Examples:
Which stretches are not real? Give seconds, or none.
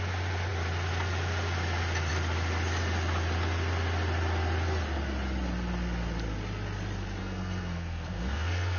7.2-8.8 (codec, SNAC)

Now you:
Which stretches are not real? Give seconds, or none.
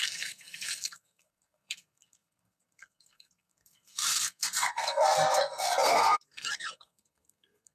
0.0-7.7 (codec, SNAC)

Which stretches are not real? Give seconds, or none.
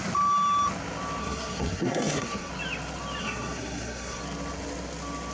1.2-2.5 (codec, SNAC); 3.2-4.2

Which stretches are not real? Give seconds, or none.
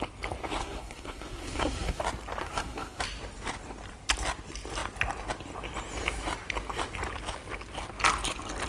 0.6-2.0 (codec, SNAC); 2.4-3.0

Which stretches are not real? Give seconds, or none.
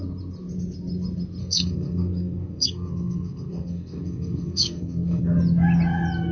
1.4-5.2 (codec, SNAC)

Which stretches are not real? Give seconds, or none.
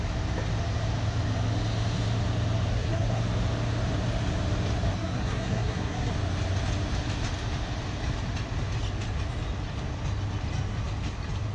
2.7-3.2 (codec, SNAC); 4.9-6.1